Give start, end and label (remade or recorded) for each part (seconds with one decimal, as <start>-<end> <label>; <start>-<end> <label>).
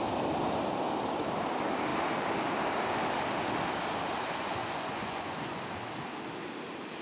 0.0-4.6 recorded; 4.6-5.6 remade; 5.6-7.0 recorded